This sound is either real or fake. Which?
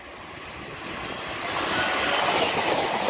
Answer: real